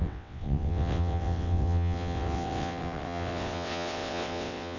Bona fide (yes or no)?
no